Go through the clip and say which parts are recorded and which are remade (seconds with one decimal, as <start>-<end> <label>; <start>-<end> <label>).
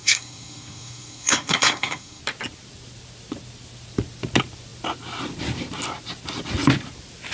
0.0-2.2 remade; 2.2-7.3 recorded